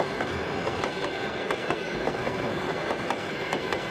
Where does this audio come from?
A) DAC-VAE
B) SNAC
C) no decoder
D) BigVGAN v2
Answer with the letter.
B